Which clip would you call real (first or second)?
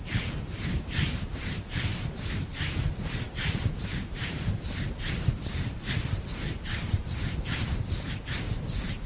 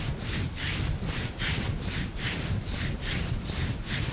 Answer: second